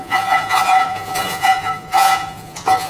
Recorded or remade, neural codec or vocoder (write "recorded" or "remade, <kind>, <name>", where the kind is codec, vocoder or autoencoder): remade, vocoder, Vocos